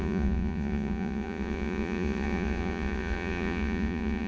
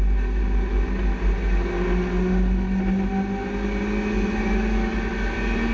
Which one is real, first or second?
second